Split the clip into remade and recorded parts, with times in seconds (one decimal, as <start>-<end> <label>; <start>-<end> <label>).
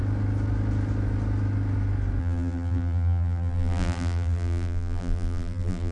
0.0-2.2 recorded; 2.2-5.9 remade